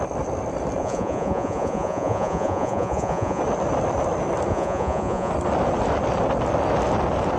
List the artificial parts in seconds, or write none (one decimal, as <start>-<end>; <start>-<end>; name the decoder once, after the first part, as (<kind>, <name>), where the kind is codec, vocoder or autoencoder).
0.8-3.4 (vocoder, Vocos); 4.5-5.3